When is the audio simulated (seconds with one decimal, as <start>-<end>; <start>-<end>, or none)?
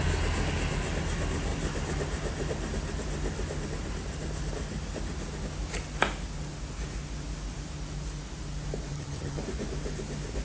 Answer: 8.9-9.4